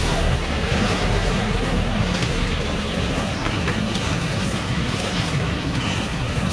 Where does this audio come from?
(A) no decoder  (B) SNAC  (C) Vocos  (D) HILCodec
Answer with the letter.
B